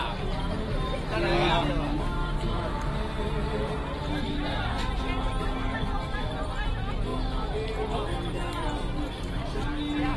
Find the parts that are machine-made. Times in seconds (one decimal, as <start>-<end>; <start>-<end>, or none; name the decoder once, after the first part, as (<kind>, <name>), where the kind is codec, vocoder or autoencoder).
none

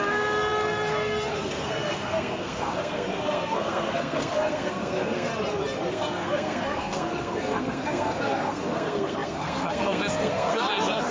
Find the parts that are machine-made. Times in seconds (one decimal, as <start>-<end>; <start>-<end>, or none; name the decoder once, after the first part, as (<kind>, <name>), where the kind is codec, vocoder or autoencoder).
0.0-5.3 (codec, SNAC); 5.9-11.1

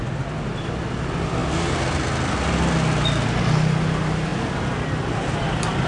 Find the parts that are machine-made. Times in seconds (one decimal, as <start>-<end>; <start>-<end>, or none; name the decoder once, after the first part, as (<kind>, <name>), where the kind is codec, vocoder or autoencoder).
none

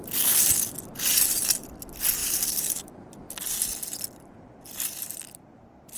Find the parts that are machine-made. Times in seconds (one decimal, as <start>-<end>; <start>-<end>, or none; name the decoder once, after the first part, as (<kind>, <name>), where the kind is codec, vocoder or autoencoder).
2.2-2.8 (vocoder, BigVGAN v2)

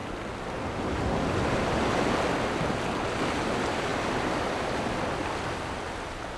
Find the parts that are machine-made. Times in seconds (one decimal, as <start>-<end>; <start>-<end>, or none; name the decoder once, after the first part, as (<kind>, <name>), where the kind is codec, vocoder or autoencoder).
none

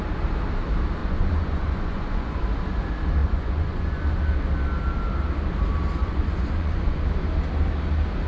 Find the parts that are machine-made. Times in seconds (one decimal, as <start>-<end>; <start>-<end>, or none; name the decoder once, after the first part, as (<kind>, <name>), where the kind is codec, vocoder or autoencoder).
1.0-2.4 (vocoder, Vocos); 3.2-4.0; 6.0-7.0

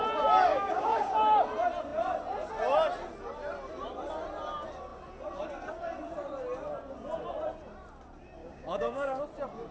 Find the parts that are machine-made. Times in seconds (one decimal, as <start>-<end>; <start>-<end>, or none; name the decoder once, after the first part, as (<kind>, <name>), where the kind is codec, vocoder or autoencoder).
0.5-1.1 (codec, DAC); 8.4-9.2

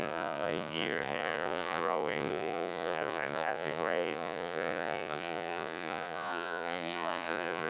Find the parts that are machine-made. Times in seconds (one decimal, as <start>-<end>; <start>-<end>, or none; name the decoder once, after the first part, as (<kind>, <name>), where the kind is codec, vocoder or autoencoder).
0.0-7.7 (vocoder, Vocos)